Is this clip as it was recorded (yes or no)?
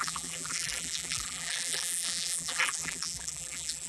no